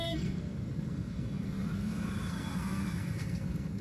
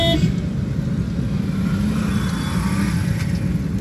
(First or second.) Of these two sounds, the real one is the second